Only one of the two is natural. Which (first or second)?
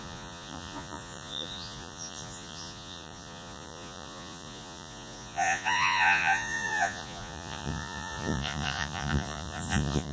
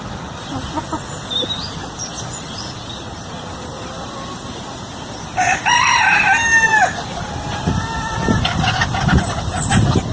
second